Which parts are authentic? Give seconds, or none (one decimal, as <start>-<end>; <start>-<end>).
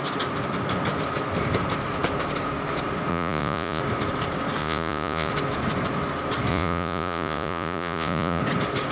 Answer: 0.0-3.1; 3.8-4.6; 5.3-6.5; 8.4-8.9